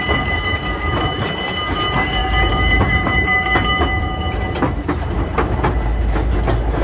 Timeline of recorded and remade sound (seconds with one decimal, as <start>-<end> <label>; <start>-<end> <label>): 0.0-2.2 recorded; 2.2-4.4 remade; 4.4-6.8 recorded